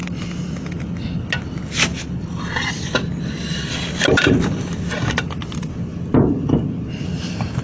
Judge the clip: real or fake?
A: real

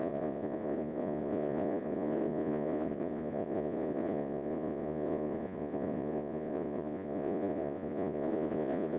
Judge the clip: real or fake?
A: fake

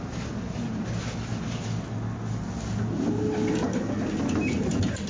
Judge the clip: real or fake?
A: real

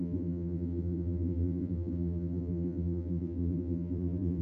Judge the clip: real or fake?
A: fake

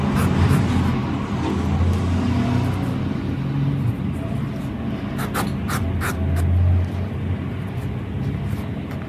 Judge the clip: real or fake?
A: real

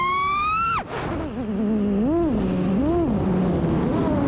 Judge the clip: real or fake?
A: real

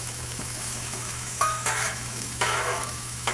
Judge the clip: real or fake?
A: fake